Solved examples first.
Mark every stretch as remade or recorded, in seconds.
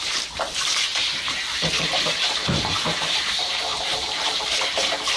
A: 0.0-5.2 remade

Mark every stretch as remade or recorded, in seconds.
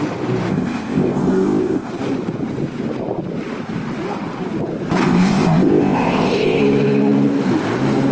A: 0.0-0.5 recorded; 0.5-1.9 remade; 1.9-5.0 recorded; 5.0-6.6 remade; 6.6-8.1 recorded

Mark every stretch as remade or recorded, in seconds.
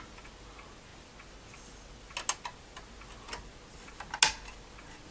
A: 0.0-5.1 recorded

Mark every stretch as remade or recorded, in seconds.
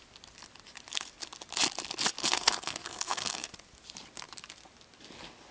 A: 0.0-2.2 recorded; 2.2-3.5 remade; 3.5-5.5 recorded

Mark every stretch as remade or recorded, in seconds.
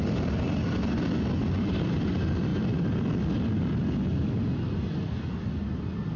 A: 0.0-6.2 recorded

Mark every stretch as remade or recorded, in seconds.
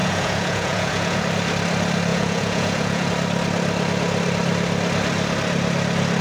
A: 0.0-1.2 remade; 1.2-2.1 recorded; 2.1-3.1 remade; 3.1-6.2 recorded